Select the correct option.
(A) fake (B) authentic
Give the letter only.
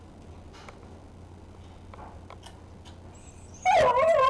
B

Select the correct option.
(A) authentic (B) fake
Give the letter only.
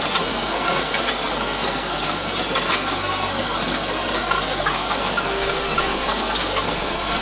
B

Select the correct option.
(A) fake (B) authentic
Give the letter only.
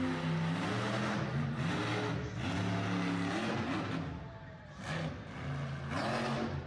B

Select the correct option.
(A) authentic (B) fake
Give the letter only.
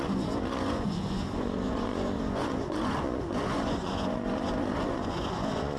B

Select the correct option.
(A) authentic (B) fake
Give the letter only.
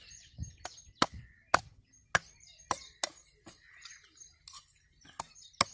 A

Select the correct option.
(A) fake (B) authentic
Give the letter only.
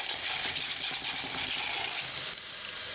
B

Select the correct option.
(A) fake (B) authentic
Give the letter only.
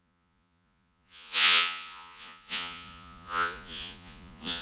A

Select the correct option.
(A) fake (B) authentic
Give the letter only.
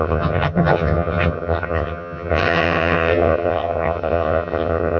A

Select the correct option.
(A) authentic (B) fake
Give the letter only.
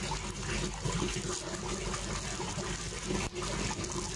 A